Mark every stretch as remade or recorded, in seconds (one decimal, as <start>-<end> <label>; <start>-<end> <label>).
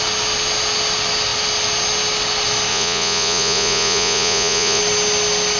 0.0-2.7 recorded; 2.7-4.8 remade; 4.8-5.6 recorded